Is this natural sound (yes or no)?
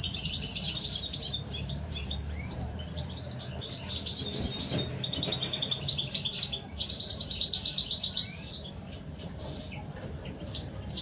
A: no